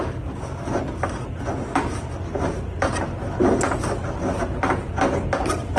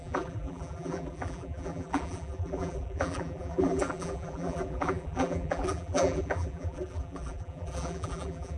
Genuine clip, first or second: first